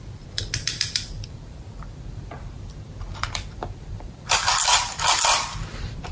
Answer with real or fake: fake